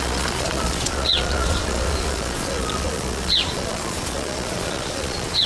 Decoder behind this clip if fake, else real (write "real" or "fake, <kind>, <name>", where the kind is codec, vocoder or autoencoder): fake, vocoder, Vocos